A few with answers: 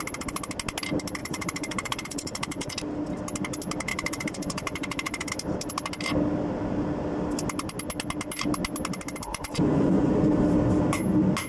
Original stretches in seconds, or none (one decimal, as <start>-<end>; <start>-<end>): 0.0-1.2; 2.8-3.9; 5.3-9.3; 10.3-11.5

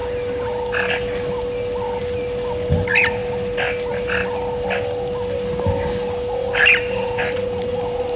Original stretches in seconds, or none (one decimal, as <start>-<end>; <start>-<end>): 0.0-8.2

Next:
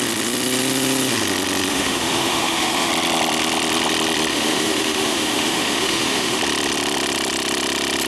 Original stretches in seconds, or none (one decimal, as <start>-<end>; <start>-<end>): 0.0-1.7; 2.9-4.3; 6.4-8.1